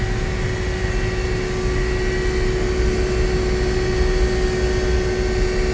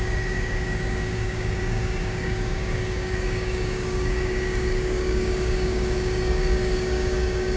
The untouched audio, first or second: first